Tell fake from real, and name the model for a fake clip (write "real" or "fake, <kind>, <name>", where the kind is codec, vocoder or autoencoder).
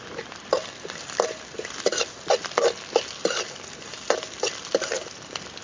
real